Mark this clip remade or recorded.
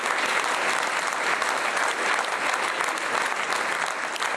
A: recorded